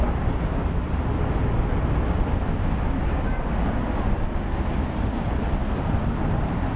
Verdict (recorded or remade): recorded